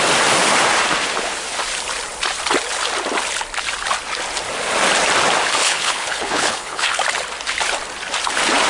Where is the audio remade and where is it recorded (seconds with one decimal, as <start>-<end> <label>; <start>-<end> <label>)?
0.0-5.6 recorded; 5.6-7.0 remade; 7.0-8.7 recorded